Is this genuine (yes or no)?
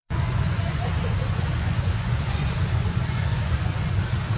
no